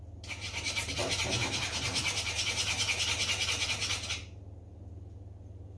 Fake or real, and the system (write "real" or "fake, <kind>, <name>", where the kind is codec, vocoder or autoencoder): real